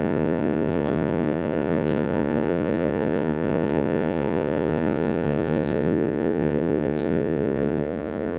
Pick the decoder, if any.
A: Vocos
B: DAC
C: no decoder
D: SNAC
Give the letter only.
A